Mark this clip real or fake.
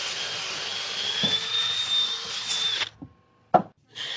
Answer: real